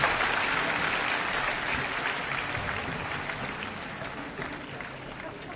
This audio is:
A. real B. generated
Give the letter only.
A